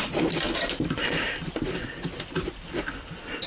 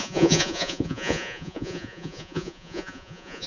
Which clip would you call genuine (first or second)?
first